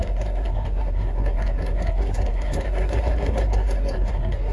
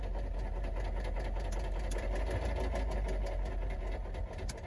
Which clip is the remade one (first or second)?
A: first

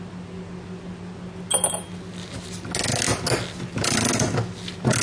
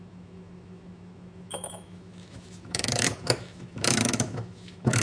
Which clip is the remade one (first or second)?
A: second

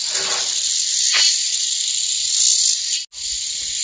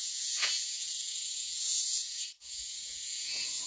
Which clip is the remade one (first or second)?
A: second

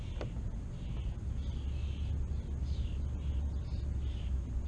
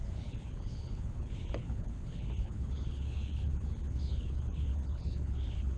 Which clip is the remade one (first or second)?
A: second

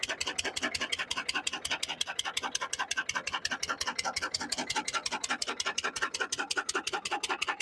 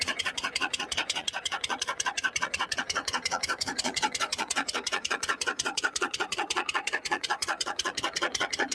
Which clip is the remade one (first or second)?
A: second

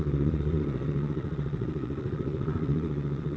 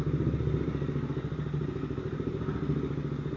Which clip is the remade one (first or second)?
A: first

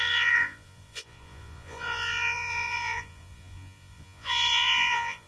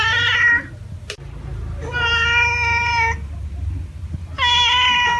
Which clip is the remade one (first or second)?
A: first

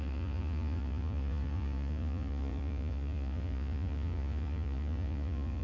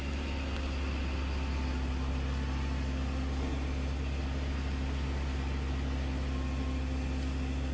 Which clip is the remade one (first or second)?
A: first